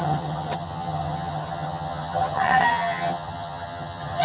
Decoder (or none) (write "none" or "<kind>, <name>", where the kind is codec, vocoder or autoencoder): vocoder, HiFi-GAN